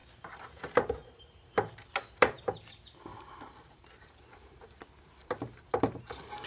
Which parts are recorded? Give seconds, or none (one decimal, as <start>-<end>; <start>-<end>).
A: 0.0-3.1; 4.8-5.2; 6.0-6.5